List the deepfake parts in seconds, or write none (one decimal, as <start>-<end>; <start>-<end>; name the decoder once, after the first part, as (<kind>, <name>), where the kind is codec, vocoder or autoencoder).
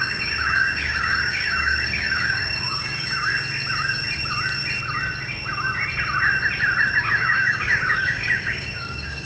0.0-3.3 (codec, DAC); 7.0-9.3